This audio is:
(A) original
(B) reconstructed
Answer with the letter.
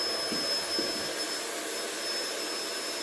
A